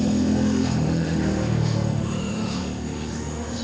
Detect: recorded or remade remade